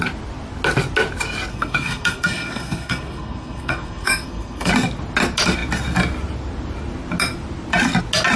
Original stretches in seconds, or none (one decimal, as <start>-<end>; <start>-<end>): 0.0-1.5; 4.7-8.4